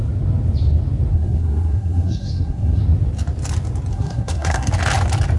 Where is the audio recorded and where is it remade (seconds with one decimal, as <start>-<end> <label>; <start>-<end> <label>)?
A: 0.0-1.1 recorded; 1.1-2.8 remade; 2.8-3.9 recorded; 3.9-4.7 remade; 4.7-5.4 recorded